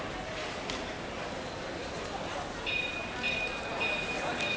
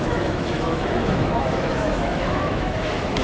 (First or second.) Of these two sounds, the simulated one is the second